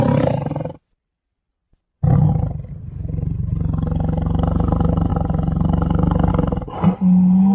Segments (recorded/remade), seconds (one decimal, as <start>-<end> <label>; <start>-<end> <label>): 0.0-7.5 recorded